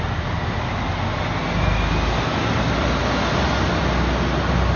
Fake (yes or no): no